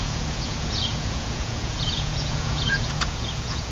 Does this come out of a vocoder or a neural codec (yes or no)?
yes